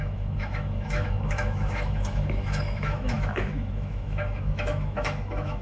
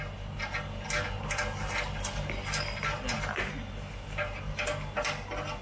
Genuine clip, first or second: second